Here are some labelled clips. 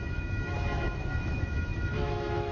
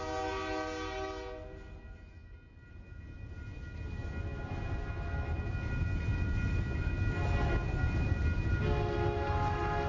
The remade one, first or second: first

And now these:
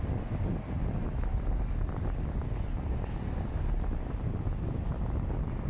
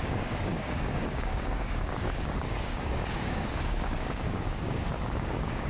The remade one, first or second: second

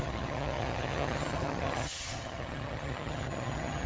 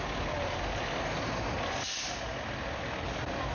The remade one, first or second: first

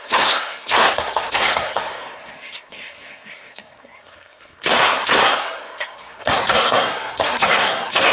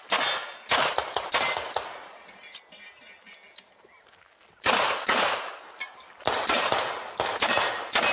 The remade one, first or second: first